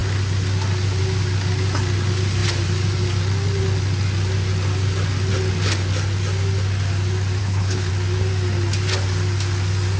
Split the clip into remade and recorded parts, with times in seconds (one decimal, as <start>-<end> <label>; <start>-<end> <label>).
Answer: 0.0-7.4 recorded; 7.4-7.9 remade; 7.9-10.0 recorded